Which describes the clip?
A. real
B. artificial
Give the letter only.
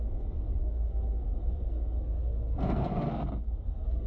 B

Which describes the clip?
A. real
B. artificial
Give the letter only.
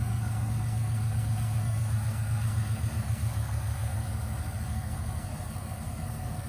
B